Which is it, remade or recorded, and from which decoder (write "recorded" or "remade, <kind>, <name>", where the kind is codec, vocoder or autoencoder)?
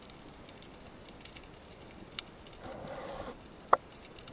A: recorded